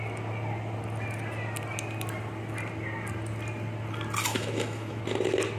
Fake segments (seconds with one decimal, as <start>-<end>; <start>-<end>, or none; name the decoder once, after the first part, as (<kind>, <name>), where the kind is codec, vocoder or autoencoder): 4.3-5.0 (autoencoder, DAC-VAE)